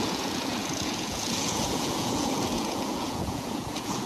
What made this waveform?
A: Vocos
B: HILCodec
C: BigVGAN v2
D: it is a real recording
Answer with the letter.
A